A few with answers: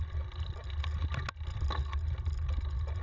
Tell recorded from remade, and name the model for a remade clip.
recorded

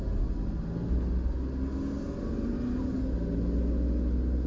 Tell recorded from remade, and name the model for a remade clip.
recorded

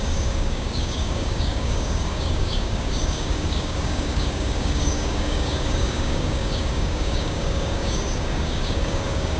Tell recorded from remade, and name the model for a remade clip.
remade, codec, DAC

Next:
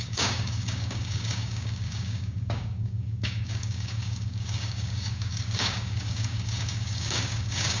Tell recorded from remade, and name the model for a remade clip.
remade, codec, DAC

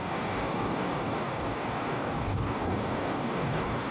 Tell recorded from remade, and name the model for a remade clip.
remade, codec, DAC